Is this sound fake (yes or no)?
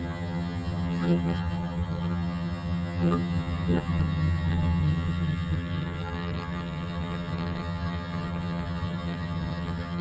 yes